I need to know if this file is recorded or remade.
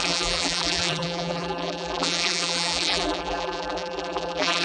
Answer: remade